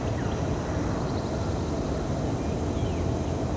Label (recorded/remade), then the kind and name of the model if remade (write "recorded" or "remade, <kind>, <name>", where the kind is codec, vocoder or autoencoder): recorded